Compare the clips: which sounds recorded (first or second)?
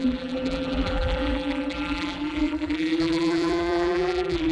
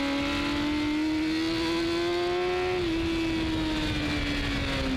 second